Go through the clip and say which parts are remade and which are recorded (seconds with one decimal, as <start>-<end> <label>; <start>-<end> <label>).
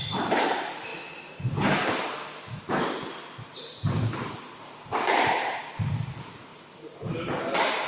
0.0-7.9 recorded